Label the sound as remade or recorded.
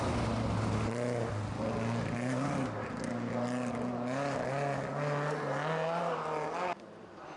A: recorded